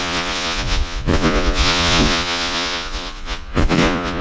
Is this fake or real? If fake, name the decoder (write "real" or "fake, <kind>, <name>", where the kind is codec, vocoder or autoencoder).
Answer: fake, vocoder, Vocos